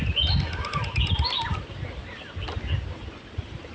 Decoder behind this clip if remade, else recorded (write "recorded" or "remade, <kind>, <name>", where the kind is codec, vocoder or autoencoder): recorded